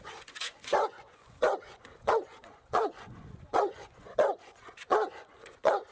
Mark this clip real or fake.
fake